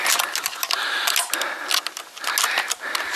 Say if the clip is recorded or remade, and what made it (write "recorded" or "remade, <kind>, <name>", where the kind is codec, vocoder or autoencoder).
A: recorded